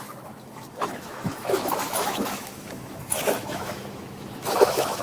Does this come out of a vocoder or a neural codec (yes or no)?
yes